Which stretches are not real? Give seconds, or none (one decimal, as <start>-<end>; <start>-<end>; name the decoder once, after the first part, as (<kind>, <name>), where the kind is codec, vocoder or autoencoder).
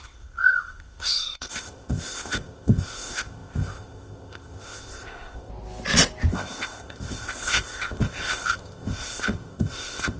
0.0-5.5 (codec, ZipCodec); 6.3-10.2